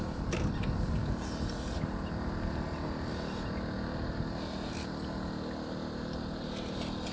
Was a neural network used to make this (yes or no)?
no